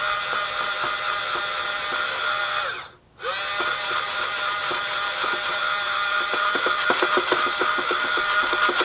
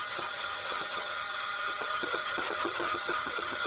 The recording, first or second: first